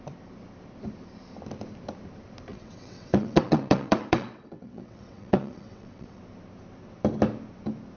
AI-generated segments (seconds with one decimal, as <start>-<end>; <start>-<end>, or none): 2.5-6.2